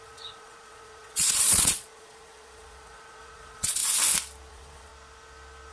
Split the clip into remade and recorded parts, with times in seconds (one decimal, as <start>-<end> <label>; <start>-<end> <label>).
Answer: 0.0-3.8 remade; 3.8-4.5 recorded; 4.5-4.9 remade; 4.9-5.7 recorded